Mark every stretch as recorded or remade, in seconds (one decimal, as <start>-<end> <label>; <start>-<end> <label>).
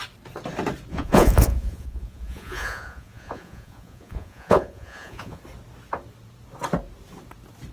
0.0-0.9 recorded; 0.9-5.4 remade; 5.4-7.7 recorded